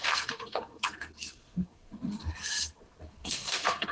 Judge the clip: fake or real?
fake